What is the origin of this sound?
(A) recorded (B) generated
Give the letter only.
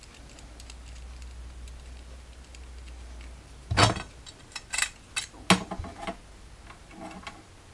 A